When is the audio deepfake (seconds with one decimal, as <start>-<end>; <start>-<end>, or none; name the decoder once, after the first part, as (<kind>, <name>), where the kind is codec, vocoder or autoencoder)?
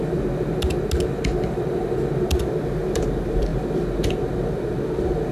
none